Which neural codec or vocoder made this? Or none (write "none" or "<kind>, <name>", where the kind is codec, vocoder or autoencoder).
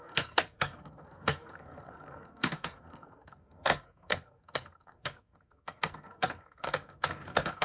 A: codec, SNAC